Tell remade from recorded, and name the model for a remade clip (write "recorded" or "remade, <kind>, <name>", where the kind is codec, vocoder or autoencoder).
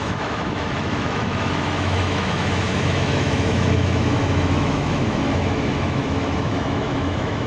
remade, autoencoder, DAC-VAE